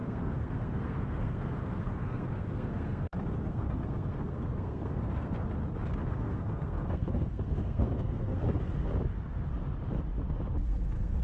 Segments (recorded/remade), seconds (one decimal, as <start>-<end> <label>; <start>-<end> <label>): 0.0-5.6 remade; 5.6-6.1 recorded; 6.1-8.9 remade; 8.9-10.6 recorded; 10.6-11.2 remade